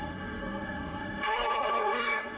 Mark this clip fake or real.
fake